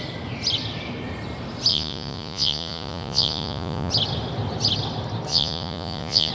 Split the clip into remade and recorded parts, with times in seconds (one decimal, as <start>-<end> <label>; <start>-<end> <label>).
0.0-1.7 recorded; 1.7-3.9 remade; 3.9-5.3 recorded; 5.3-6.3 remade